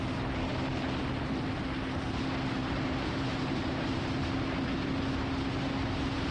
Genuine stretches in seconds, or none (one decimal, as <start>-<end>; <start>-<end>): 0.0-2.6; 4.0-6.3